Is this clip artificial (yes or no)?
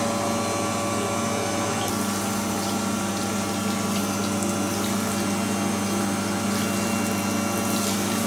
no